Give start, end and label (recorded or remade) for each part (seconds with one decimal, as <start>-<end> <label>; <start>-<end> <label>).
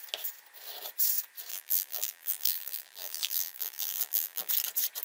0.0-1.5 recorded; 1.5-4.5 remade; 4.5-5.0 recorded